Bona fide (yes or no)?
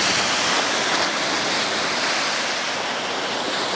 yes